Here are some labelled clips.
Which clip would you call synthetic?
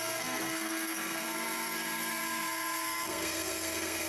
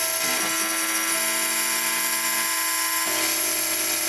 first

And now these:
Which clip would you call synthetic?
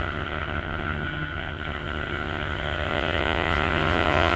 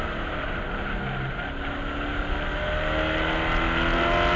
first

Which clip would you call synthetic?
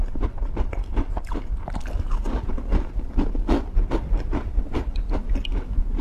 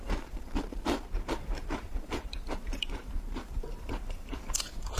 second